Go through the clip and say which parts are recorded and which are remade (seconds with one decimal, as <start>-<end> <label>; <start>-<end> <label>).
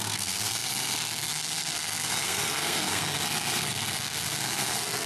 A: 0.0-5.1 remade